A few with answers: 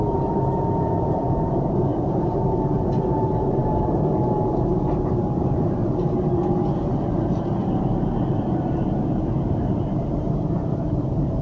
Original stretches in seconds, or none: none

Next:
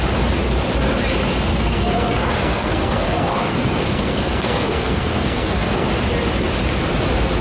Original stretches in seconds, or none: 0.0-1.5; 5.9-7.4